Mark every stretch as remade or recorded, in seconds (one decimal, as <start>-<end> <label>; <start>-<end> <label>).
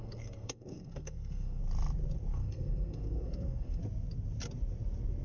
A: 0.0-1.6 remade; 1.6-2.3 recorded; 2.3-3.8 remade; 3.8-5.2 recorded